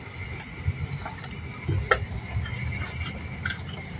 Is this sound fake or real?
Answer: real